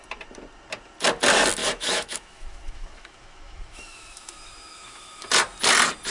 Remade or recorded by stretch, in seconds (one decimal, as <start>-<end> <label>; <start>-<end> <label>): 0.0-1.6 recorded; 1.6-5.3 remade; 5.3-6.1 recorded